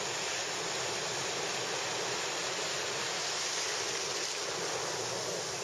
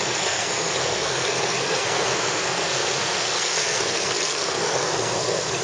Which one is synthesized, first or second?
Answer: second